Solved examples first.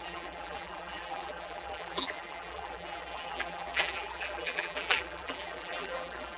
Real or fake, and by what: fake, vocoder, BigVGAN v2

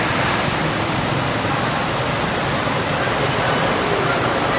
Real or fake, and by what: real